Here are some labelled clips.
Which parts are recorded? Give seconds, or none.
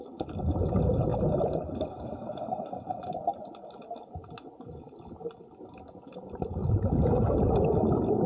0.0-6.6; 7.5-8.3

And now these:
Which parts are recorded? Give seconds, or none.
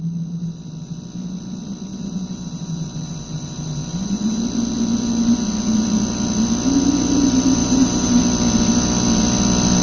0.0-1.9; 4.4-7.6; 8.2-9.8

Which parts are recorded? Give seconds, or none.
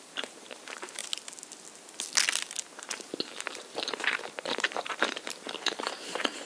1.0-2.7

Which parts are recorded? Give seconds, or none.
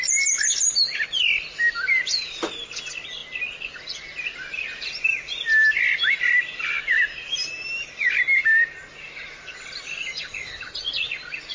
0.0-11.5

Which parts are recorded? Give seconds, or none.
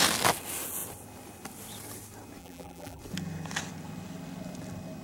0.0-2.4; 3.0-5.0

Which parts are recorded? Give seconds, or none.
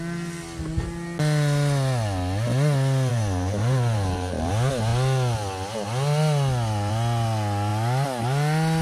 0.0-3.1; 4.5-8.8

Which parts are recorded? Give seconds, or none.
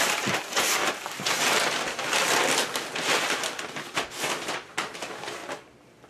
0.8-4.5; 5.4-6.1